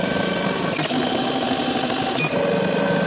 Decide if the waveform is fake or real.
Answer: real